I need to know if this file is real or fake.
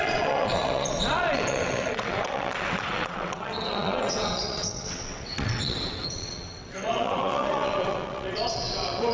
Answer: fake